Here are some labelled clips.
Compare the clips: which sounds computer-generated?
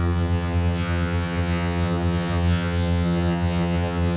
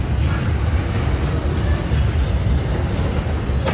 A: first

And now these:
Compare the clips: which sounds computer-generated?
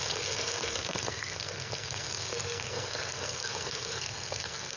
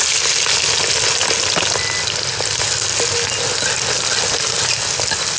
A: first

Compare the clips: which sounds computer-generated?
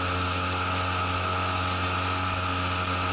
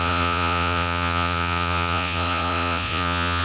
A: second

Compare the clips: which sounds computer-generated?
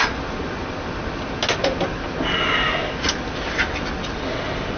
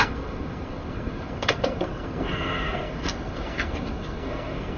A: second